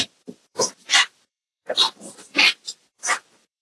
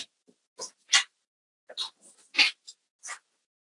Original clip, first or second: second